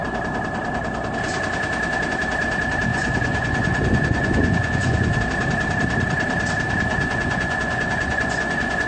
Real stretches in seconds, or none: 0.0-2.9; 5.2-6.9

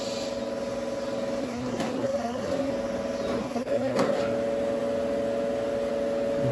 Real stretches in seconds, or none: 0.0-1.4; 2.7-3.4; 4.2-6.5

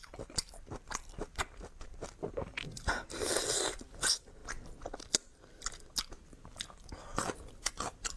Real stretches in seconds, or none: 0.0-8.2